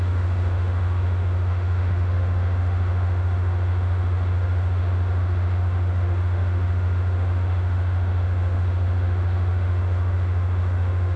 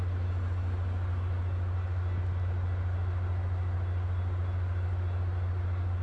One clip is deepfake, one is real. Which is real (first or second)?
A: second